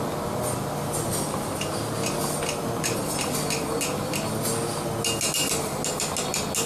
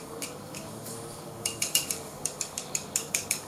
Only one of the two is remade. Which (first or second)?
second